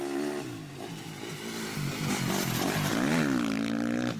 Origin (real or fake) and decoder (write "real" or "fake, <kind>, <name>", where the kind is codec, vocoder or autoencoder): real